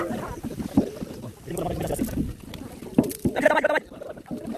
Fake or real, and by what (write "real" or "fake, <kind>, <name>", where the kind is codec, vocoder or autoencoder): real